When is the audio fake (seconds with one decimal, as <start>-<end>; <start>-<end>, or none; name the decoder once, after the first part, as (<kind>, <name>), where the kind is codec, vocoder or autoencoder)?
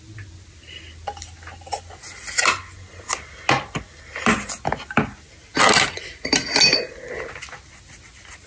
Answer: none